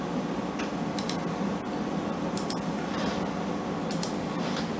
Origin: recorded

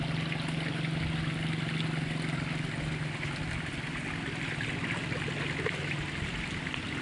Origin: recorded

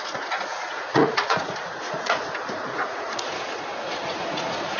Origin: remade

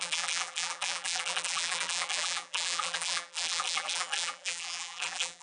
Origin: remade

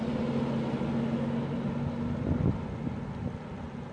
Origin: recorded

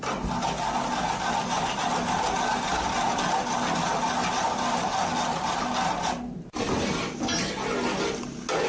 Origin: recorded